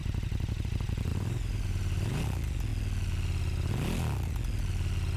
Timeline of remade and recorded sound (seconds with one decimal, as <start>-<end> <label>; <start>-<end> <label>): 0.0-0.7 remade; 0.7-1.1 recorded; 1.1-2.2 remade; 2.2-5.2 recorded